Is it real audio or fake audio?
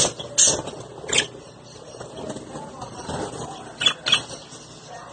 real